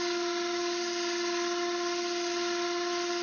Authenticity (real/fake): real